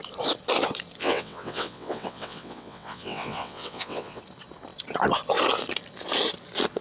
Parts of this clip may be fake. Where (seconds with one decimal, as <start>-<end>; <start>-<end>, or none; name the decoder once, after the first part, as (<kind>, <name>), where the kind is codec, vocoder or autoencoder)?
1.0-4.2 (vocoder, WaveNeXt)